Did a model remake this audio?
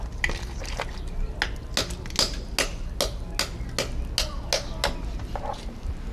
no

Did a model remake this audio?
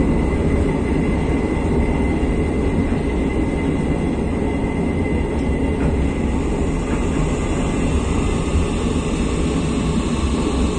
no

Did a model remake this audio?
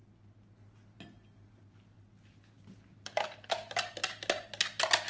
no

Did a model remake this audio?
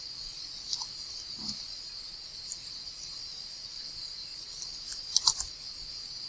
no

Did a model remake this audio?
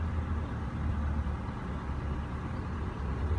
no